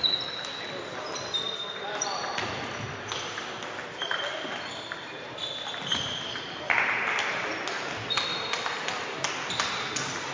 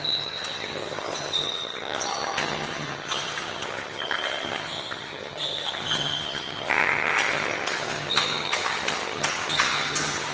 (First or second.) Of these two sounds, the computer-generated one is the second